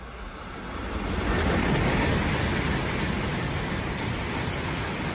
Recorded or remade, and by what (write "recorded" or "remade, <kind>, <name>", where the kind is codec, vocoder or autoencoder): recorded